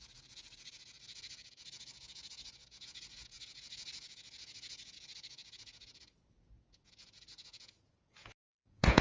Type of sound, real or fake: fake